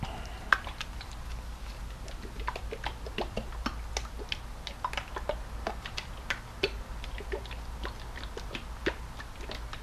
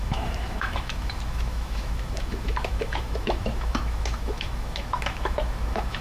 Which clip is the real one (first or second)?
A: first